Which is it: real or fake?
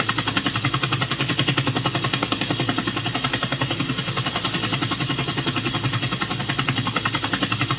real